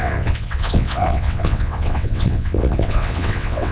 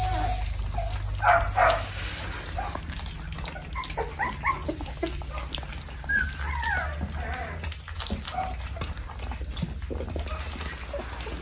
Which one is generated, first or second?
first